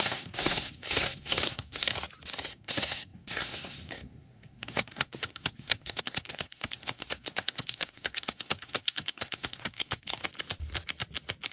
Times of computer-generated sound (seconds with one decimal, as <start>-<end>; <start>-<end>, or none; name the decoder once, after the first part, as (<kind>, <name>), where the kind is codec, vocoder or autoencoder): 0.0-1.9 (codec, SNAC); 2.5-10.2